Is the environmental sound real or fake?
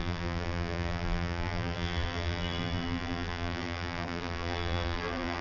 fake